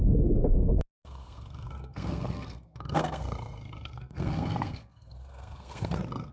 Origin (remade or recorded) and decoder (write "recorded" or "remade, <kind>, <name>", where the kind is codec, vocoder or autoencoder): remade, codec, SNAC